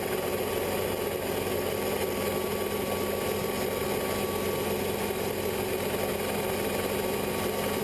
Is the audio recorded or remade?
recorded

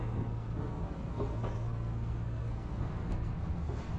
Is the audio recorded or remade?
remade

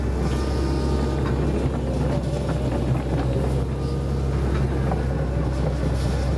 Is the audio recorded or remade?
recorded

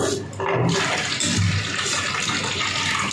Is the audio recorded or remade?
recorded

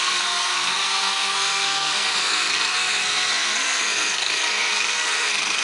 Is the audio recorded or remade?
remade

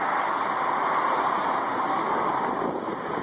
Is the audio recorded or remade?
recorded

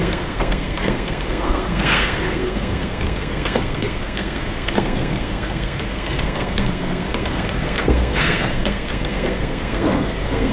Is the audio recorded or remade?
remade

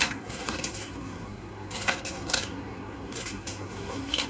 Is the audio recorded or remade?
remade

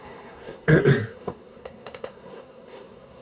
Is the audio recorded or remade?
remade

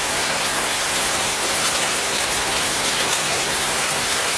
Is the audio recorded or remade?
remade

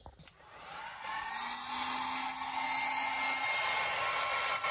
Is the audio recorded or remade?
recorded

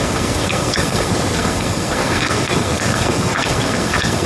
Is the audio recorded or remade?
remade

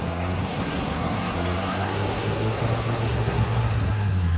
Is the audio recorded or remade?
remade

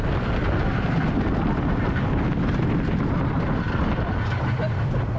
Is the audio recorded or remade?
recorded